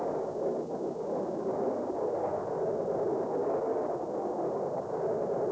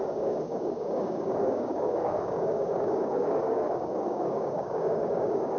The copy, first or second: second